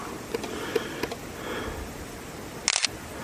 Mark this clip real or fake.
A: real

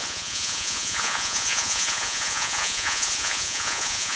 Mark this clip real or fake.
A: fake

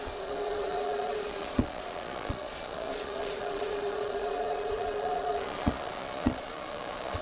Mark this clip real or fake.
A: fake